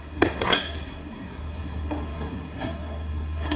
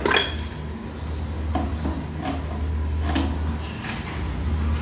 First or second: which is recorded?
second